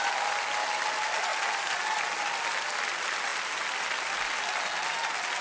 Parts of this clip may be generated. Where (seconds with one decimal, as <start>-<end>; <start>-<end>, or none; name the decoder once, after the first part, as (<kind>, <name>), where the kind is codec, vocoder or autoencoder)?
none